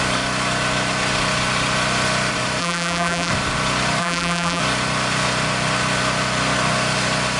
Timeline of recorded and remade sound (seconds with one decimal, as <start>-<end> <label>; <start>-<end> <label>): 0.0-2.6 recorded; 2.6-3.3 remade; 3.3-4.0 recorded; 4.0-4.6 remade; 4.6-7.4 recorded